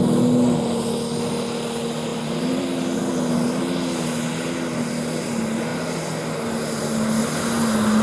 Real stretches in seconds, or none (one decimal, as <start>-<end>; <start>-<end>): 0.0-2.1; 3.0-8.0